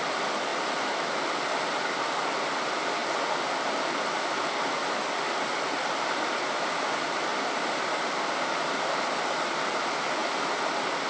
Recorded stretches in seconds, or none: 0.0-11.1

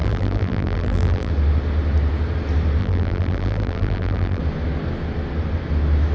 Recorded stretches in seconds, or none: 1.3-2.8; 4.4-6.1